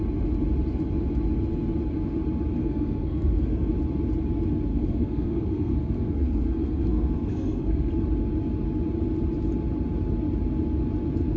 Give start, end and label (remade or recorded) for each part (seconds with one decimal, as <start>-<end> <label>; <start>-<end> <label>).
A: 0.0-2.6 recorded; 2.6-3.7 remade; 3.7-4.7 recorded; 4.7-7.9 remade; 7.9-11.4 recorded